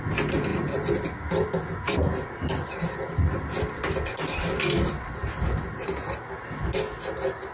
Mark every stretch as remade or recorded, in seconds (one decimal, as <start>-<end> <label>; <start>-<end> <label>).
0.0-7.5 recorded